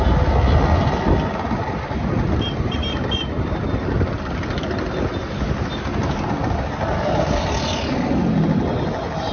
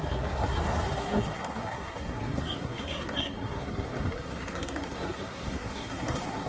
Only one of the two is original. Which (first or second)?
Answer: first